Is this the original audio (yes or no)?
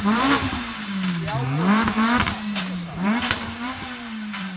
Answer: no